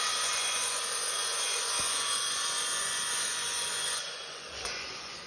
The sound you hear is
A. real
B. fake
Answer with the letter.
B